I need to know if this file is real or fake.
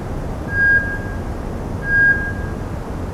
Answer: real